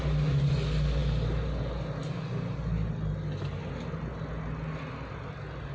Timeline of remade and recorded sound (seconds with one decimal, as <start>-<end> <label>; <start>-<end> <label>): 0.0-5.7 recorded